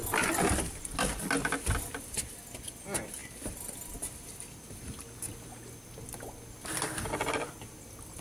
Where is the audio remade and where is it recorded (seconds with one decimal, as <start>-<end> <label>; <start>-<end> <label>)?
0.0-3.2 recorded; 3.2-4.6 remade; 4.6-8.2 recorded

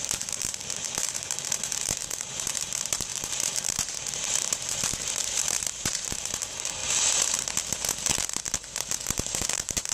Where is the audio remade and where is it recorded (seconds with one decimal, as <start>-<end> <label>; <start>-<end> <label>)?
0.0-6.8 remade; 6.8-9.3 recorded; 9.3-9.9 remade

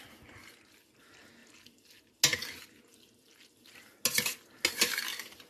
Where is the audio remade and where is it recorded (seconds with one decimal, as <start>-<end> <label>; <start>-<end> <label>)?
0.0-5.5 recorded

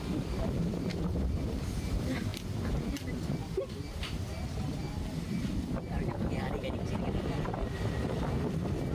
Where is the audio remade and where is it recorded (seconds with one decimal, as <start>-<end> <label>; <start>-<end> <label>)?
0.0-8.9 recorded

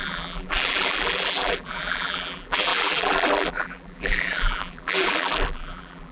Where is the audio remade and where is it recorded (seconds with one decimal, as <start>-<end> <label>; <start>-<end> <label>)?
0.0-6.1 remade

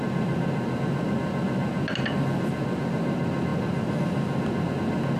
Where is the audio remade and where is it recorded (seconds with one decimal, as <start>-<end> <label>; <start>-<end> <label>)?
0.0-5.2 recorded

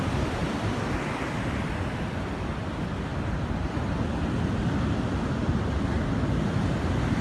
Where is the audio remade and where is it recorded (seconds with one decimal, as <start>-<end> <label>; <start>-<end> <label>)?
0.0-7.2 recorded

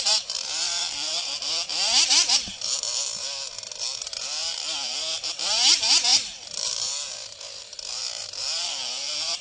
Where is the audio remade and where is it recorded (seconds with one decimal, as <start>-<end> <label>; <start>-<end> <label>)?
0.0-9.4 remade